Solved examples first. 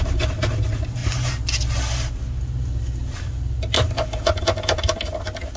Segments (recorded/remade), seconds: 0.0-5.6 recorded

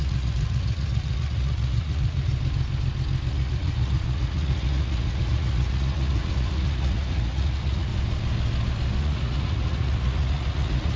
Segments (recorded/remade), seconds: 0.0-2.3 remade; 2.3-3.3 recorded; 3.3-7.9 remade; 7.9-9.0 recorded; 9.0-11.0 remade

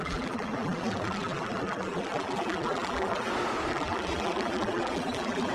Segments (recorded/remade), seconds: 0.0-3.3 remade; 3.3-3.7 recorded; 3.7-5.5 remade

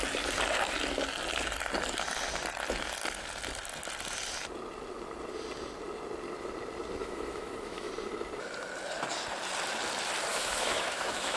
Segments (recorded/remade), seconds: 0.0-7.0 recorded; 7.0-7.9 remade; 7.9-10.3 recorded; 10.3-11.4 remade

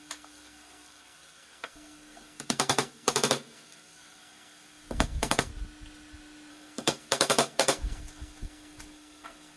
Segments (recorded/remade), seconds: 0.0-5.5 remade; 5.5-6.5 recorded; 6.5-9.6 remade

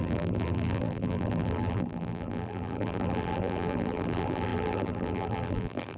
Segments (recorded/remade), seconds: 0.0-6.0 remade

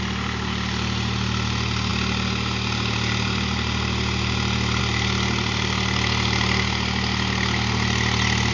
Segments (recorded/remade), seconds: 0.0-8.5 recorded

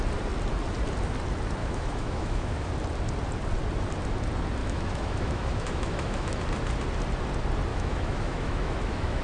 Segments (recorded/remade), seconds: 0.0-1.6 recorded; 1.6-2.7 remade; 2.7-4.6 recorded; 4.6-6.4 remade; 6.4-7.7 recorded; 7.7-9.2 remade